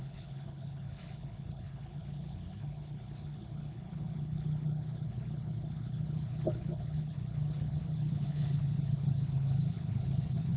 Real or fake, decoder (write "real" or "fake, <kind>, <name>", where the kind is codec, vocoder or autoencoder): fake, codec, HILCodec